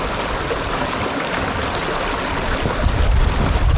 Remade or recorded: recorded